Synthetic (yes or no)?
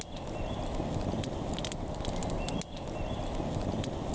no